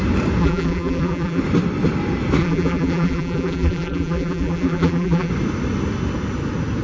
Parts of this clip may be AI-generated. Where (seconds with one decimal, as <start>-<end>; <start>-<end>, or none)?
0.4-1.4; 2.4-5.3